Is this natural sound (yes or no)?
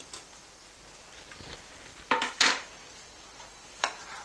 no